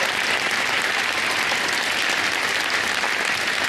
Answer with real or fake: real